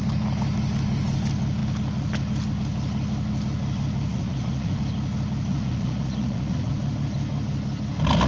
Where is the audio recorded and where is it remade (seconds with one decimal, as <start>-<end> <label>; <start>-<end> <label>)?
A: 0.0-4.1 recorded; 4.1-4.8 remade; 4.8-5.5 recorded; 5.5-6.7 remade; 6.7-8.3 recorded